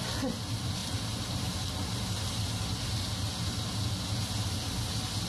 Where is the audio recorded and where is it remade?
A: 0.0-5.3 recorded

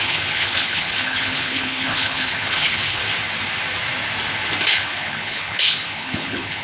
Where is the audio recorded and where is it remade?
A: 0.0-3.0 remade; 3.0-4.7 recorded; 4.7-6.6 remade

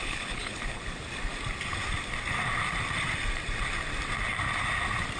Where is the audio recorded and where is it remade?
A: 0.0-0.8 remade; 0.8-5.2 recorded

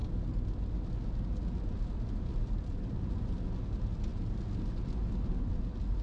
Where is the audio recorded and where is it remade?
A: 0.0-6.0 recorded